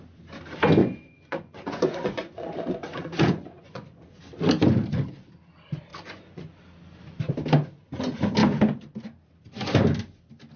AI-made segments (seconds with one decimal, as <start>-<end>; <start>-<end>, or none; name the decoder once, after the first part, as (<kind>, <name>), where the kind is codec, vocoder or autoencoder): 0.8-4.3 (vocoder, Vocos); 5.9-6.6